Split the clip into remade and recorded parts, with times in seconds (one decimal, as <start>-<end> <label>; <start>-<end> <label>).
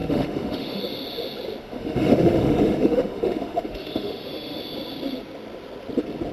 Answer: 0.0-0.8 remade; 0.8-1.6 recorded; 1.6-4.6 remade; 4.6-6.3 recorded